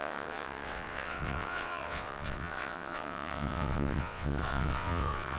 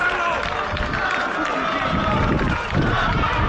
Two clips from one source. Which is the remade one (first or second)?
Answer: first